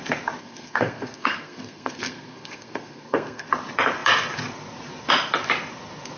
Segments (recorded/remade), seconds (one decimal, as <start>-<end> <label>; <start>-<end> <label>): 0.0-0.4 recorded; 0.4-3.5 remade; 3.5-6.2 recorded